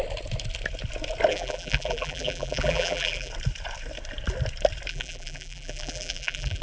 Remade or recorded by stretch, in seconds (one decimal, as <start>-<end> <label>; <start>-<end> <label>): 0.0-1.3 recorded; 1.3-3.3 remade; 3.3-4.9 recorded; 4.9-6.6 remade